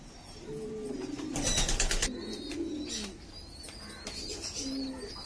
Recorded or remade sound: recorded